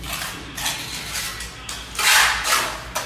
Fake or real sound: real